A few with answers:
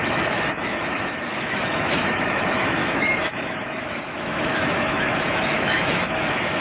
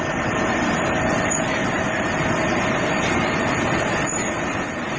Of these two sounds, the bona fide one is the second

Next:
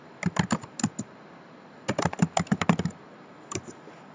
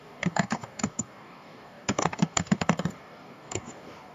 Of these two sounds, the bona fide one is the first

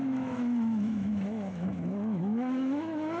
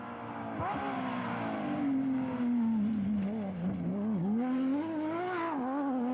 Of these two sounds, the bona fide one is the second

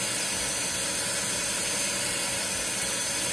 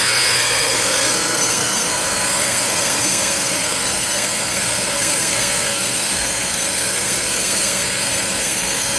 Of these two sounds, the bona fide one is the first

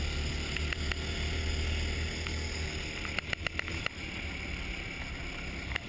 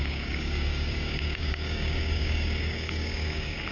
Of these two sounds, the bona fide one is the first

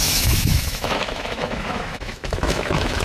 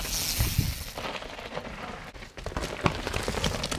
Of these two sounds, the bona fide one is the second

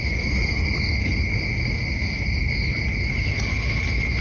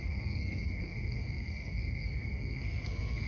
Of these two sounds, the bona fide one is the first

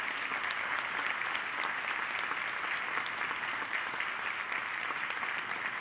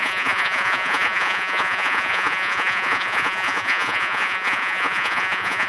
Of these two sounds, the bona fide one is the first